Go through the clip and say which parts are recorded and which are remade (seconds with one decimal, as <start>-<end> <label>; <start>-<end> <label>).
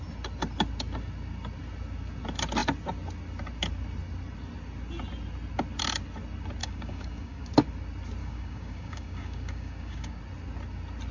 0.0-6.6 recorded; 6.6-7.5 remade; 7.5-8.2 recorded; 8.2-10.2 remade; 10.2-11.1 recorded